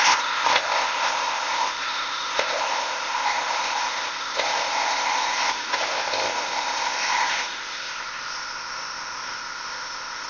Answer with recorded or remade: remade